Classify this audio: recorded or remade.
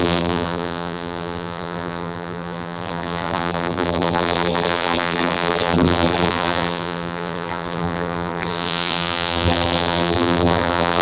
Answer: remade